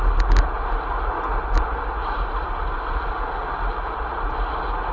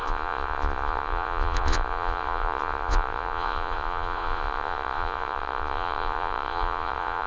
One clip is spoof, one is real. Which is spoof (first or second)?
second